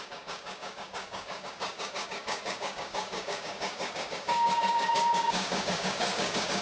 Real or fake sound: fake